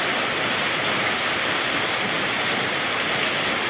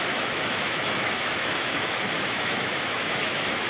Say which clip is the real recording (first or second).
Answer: first